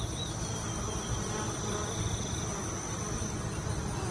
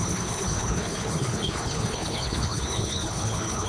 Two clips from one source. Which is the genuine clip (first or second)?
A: first